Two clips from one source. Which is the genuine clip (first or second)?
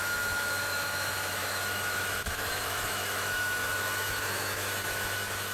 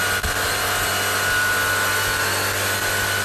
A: second